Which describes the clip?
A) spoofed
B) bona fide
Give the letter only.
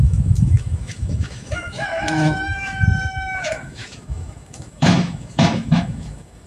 A